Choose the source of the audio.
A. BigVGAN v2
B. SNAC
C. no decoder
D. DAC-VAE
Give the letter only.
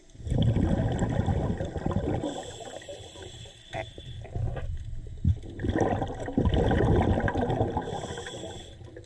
C